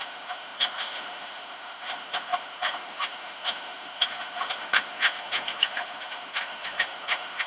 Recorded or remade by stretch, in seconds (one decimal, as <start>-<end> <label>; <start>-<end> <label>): 0.0-7.5 remade